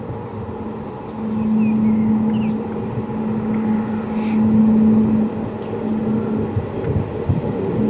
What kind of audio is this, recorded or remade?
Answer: recorded